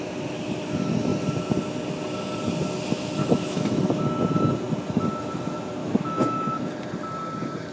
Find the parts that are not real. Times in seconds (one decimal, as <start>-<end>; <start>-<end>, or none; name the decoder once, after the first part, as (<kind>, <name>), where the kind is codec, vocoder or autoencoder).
3.2-3.8 (autoencoder, DAC-VAE); 5.8-6.7